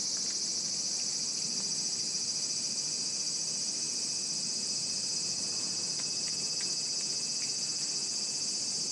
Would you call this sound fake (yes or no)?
no